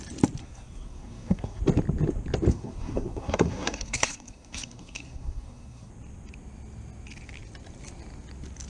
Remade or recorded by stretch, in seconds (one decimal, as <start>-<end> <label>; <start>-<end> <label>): 0.0-0.4 recorded; 0.4-1.6 remade; 1.6-2.5 recorded; 2.5-5.9 remade; 5.9-8.7 recorded